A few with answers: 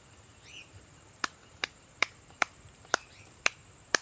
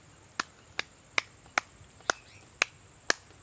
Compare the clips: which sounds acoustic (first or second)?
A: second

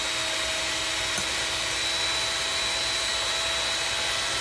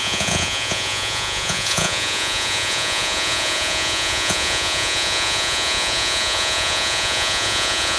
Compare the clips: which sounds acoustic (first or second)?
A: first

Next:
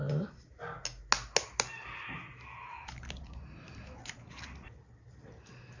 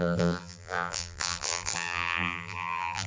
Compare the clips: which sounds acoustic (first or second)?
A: first